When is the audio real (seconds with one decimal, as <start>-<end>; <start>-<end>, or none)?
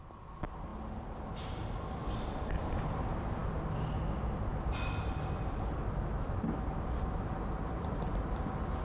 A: 0.0-8.8